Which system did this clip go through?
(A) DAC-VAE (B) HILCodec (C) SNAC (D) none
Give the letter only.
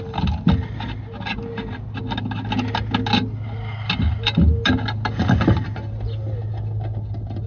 D